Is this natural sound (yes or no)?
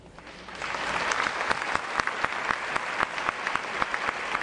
yes